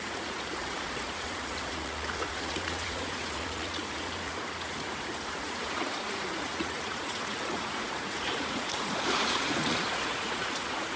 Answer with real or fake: fake